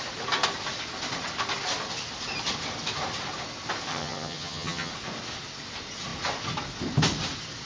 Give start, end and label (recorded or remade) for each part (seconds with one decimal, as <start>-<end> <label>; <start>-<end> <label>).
0.0-3.9 recorded; 3.9-4.9 remade; 4.9-7.6 recorded